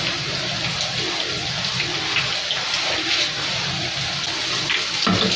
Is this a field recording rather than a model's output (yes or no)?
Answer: yes